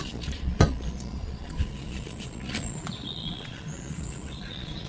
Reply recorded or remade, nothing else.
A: remade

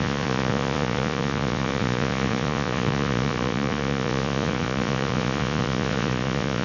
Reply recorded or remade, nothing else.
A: remade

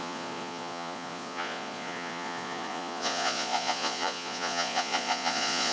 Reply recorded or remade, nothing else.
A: remade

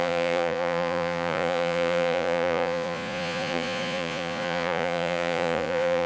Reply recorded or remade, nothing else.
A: remade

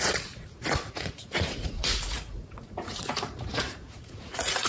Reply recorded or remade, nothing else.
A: remade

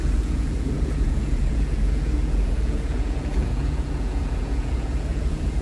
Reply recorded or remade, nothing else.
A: remade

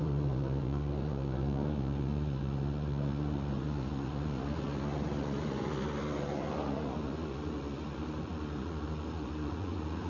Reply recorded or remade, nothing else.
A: remade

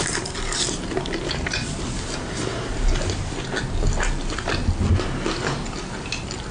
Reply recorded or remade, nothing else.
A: recorded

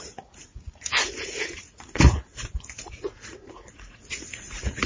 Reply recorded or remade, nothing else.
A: remade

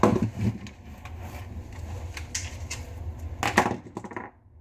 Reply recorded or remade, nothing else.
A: recorded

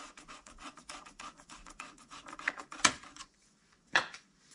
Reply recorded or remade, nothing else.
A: remade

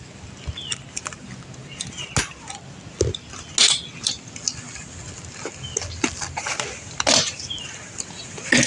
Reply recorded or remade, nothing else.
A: recorded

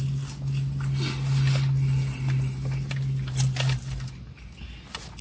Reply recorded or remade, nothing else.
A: recorded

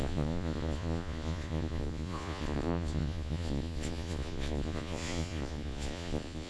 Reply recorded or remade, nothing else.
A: remade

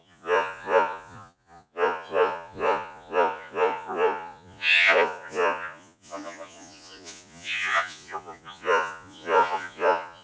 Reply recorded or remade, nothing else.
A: remade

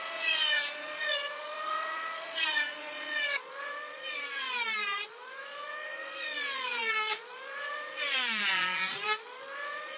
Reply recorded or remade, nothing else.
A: remade